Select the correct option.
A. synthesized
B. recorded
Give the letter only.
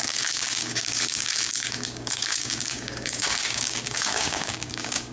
A